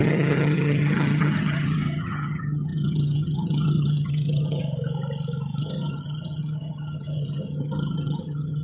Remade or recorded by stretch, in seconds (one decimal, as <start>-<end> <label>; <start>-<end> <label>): 0.0-4.6 remade; 4.6-5.6 recorded; 5.6-8.6 remade